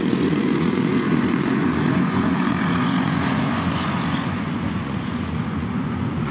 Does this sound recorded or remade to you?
remade